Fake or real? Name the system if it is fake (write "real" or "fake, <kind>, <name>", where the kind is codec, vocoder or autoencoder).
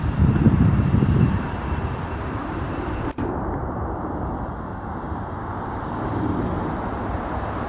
fake, vocoder, BigVGAN v2